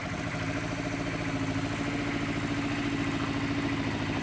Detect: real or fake real